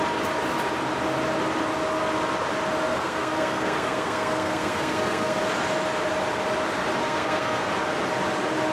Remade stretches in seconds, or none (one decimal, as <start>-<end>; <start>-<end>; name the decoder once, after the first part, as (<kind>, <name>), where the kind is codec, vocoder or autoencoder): 2.9-5.4 (codec, SNAC); 7.0-7.7